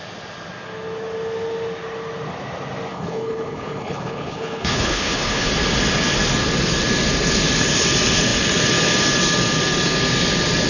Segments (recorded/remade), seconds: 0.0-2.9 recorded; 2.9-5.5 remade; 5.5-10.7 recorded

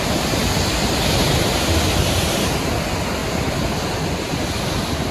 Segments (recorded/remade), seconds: 0.0-5.1 recorded

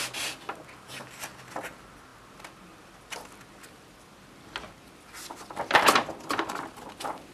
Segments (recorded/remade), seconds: 0.0-7.3 recorded

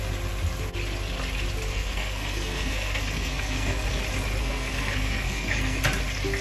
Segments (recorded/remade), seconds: 0.0-1.7 recorded; 1.7-4.0 remade; 4.0-4.4 recorded; 4.4-5.8 remade; 5.8-6.4 recorded

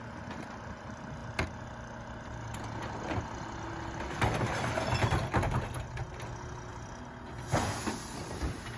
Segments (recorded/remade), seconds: 0.0-8.8 recorded

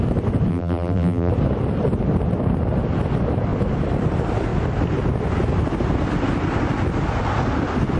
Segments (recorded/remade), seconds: 0.0-0.5 recorded; 0.5-1.3 remade; 1.3-8.0 recorded

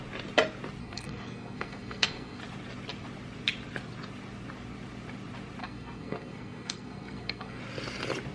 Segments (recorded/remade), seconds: 0.0-0.8 recorded; 0.8-2.4 remade; 2.4-5.6 recorded; 5.6-7.6 remade; 7.6-8.3 recorded

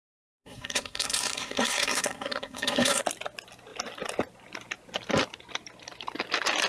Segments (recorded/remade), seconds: 0.0-3.0 remade; 3.0-6.7 recorded